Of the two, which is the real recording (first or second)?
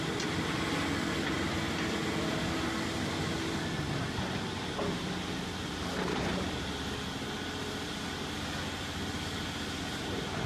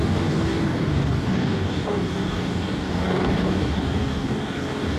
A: first